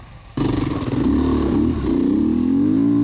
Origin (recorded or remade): recorded